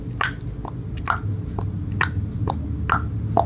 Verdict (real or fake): real